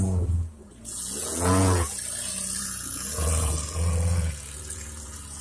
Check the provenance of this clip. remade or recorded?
remade